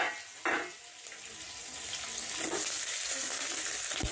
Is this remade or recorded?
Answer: recorded